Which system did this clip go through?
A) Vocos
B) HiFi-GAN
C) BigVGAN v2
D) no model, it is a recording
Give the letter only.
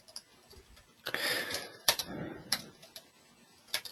C